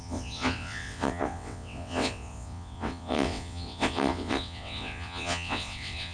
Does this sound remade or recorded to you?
remade